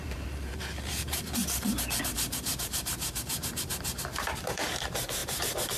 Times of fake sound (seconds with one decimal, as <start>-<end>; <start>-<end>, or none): 0.0-1.4; 2.0-5.8